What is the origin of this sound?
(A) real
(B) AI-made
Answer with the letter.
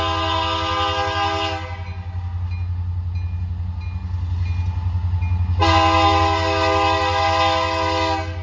A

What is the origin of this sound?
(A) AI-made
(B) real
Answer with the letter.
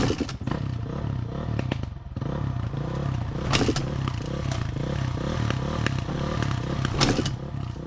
B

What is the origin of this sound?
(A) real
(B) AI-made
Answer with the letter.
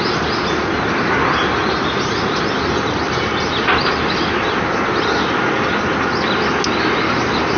A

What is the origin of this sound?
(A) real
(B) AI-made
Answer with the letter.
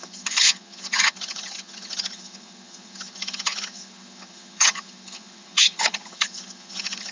B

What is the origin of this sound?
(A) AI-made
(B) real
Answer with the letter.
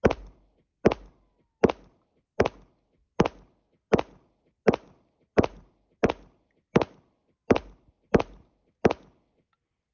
B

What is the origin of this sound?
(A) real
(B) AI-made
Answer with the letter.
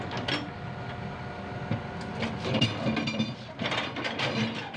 A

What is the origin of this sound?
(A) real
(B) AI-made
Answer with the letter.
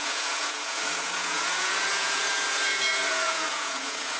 B